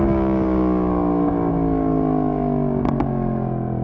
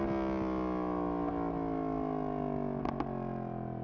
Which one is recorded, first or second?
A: second